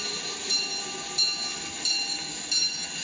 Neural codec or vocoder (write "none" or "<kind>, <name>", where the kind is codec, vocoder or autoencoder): none